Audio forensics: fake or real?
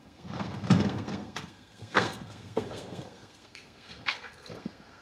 fake